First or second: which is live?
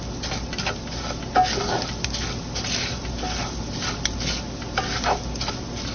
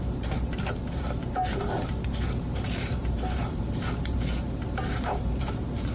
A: first